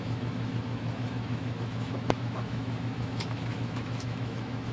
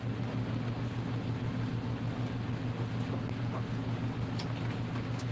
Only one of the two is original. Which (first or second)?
second